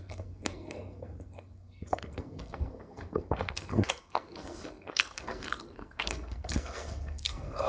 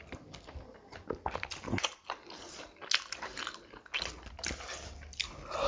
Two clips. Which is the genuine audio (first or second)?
second